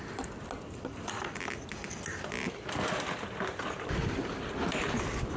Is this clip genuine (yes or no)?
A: yes